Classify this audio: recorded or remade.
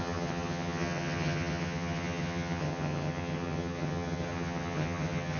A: remade